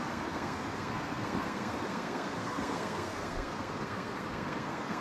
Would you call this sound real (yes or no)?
no